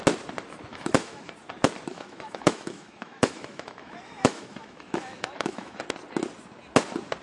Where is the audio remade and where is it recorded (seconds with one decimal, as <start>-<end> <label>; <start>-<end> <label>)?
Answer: 0.0-0.7 recorded; 0.7-1.3 remade; 1.3-1.9 recorded; 1.9-5.8 remade; 5.8-7.2 recorded